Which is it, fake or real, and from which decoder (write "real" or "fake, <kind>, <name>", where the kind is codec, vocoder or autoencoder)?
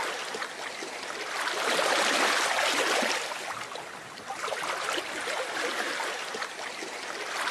real